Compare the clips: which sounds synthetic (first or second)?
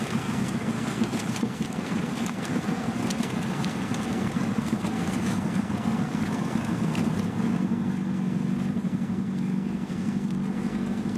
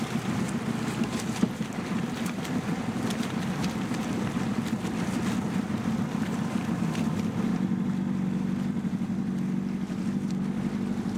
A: first